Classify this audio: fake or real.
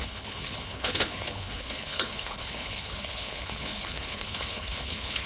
fake